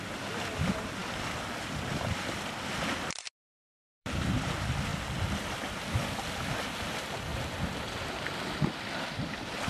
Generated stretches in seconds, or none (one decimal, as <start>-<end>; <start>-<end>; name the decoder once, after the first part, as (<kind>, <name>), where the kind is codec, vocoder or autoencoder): 0.0-4.9 (vocoder, BigVGAN v2); 5.4-9.7